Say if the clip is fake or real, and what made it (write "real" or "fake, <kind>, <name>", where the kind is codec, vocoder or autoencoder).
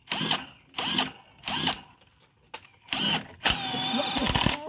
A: real